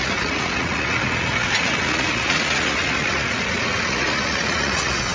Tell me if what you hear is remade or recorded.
remade